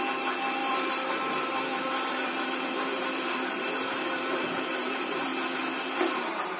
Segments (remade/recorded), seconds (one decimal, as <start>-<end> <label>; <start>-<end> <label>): 0.0-5.3 remade; 5.3-6.1 recorded; 6.1-6.6 remade